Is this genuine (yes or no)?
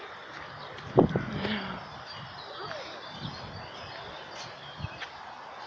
yes